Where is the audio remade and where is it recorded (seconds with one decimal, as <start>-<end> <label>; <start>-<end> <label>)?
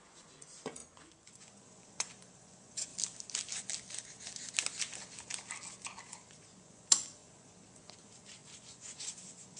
0.0-2.9 remade; 2.9-6.0 recorded; 6.0-9.6 remade